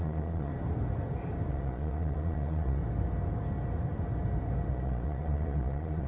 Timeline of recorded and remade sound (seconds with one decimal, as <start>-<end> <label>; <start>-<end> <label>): 0.0-0.5 remade; 0.5-1.5 recorded; 1.5-2.8 remade; 2.8-4.7 recorded; 4.7-6.1 remade

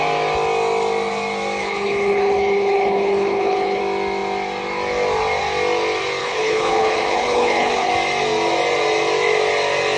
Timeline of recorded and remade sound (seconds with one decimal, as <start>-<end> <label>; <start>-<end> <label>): 0.0-1.6 recorded; 1.6-3.8 remade; 3.8-6.2 recorded; 6.2-7.9 remade; 7.9-10.0 recorded

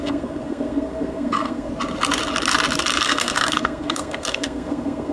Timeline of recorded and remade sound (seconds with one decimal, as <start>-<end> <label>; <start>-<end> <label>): 0.0-1.7 remade; 1.7-3.0 recorded; 3.0-5.1 remade